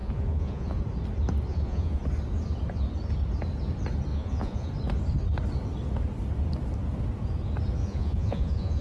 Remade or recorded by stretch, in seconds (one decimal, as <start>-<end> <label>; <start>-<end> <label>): 0.0-0.8 remade; 0.8-1.5 recorded; 1.5-2.0 remade; 2.0-4.1 recorded; 4.1-4.7 remade; 4.7-7.8 recorded; 7.8-8.8 remade